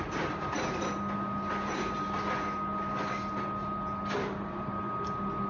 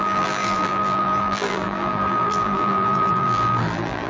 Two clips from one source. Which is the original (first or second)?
first